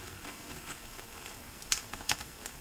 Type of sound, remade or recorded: remade